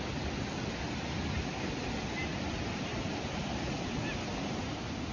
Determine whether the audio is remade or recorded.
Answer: recorded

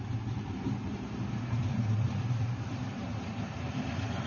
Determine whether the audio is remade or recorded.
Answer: remade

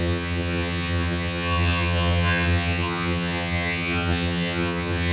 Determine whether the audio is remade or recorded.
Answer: remade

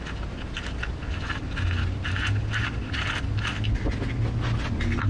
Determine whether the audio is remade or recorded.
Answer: recorded